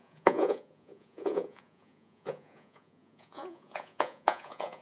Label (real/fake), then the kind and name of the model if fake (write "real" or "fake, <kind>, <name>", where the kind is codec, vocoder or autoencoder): fake, vocoder, Vocos